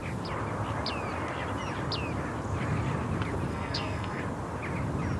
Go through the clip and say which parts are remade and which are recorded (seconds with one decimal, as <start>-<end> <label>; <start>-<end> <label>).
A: 0.0-3.5 recorded; 3.5-4.2 remade; 4.2-5.2 recorded